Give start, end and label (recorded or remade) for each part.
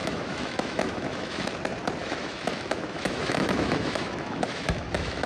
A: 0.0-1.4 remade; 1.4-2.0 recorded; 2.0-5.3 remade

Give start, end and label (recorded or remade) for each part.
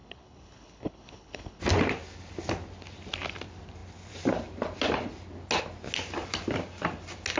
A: 0.0-1.6 remade; 1.6-7.4 recorded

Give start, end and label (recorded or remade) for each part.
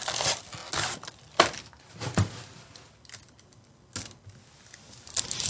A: 0.0-5.5 recorded